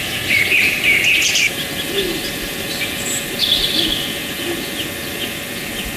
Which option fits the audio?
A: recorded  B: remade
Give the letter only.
A